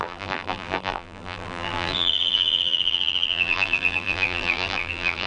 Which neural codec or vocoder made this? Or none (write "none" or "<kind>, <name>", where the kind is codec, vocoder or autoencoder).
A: vocoder, BigVGAN v2